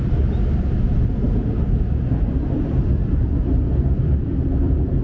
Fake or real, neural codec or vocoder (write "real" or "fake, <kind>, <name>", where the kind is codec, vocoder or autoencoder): real